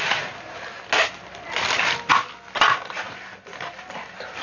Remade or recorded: recorded